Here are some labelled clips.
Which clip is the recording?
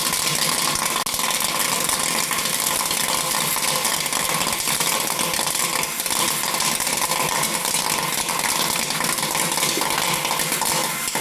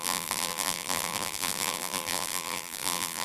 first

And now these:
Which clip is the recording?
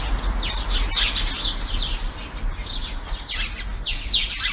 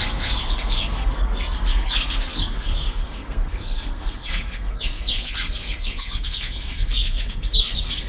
first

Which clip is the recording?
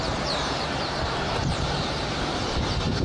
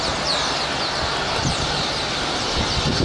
second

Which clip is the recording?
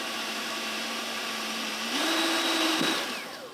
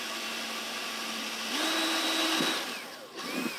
second